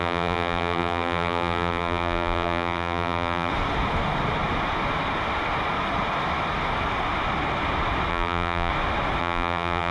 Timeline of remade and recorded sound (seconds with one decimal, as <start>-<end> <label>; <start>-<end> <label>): 0.0-3.5 remade; 3.5-8.1 recorded; 8.1-8.7 remade; 8.7-9.2 recorded; 9.2-9.9 remade